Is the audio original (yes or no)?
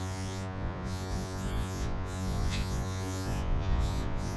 no